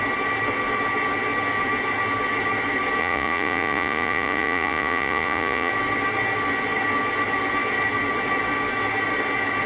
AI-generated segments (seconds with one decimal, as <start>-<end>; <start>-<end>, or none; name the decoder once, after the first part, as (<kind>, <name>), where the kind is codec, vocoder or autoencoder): 3.0-5.7 (vocoder, Vocos)

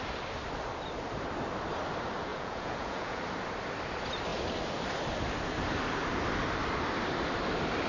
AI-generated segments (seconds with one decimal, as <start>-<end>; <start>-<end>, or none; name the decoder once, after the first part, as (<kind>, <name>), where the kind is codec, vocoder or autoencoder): 2.3-3.2 (vocoder, Vocos)

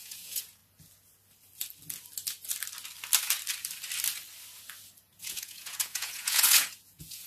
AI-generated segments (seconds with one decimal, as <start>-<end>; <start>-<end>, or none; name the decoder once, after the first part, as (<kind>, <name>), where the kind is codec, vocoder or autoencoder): 0.0-0.6 (vocoder, Vocos); 5.0-7.3

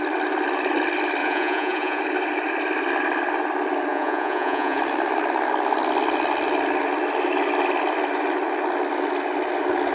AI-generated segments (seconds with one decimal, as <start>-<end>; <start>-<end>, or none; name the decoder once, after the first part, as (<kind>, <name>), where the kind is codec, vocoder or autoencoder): 1.2-2.0 (vocoder, Vocos); 3.9-4.8

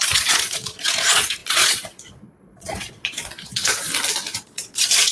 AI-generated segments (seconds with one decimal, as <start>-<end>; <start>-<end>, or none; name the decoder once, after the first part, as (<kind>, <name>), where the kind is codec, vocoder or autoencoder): 0.0-3.9 (vocoder, Vocos); 4.4-5.1